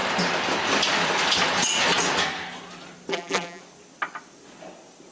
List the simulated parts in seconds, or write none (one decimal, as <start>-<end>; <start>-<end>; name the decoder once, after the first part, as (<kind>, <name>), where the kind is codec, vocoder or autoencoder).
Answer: 3.1-3.6 (vocoder, BigVGAN v2)